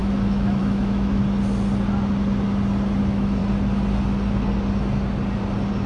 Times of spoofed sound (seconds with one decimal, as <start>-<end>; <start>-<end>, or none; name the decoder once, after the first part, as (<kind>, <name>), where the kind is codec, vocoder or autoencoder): 0.0-1.2 (autoencoder, DAC-VAE); 3.0-3.4